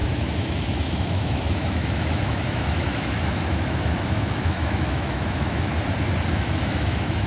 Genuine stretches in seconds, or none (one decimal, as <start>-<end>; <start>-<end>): 5.7-6.3